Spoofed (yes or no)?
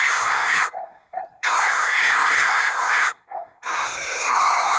yes